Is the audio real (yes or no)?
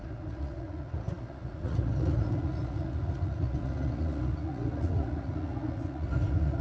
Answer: no